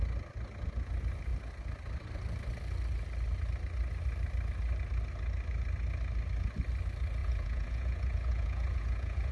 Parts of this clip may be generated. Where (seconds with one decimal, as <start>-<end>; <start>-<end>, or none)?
7.2-9.3